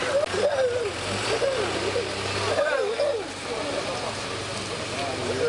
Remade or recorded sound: recorded